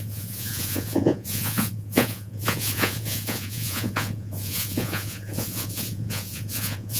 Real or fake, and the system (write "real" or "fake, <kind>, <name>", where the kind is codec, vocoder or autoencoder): fake, vocoder, Vocos